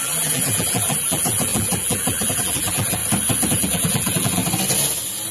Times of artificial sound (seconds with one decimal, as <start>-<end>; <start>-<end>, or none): 0.0-3.0; 3.5-4.4